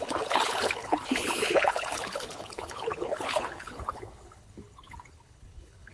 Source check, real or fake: fake